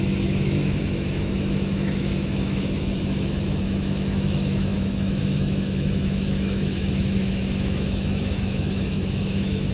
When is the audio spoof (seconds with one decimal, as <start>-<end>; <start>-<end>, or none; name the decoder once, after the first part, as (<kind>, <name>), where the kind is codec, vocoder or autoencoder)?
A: 0.0-9.7 (autoencoder, DAC-VAE)